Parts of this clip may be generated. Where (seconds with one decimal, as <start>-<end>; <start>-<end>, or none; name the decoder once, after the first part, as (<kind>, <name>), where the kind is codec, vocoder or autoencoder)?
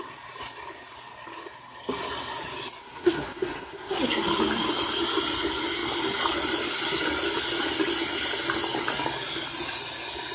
2.8-4.0 (codec, SNAC)